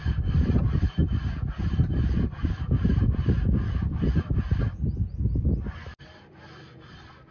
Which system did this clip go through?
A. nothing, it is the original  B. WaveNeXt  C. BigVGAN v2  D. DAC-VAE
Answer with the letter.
A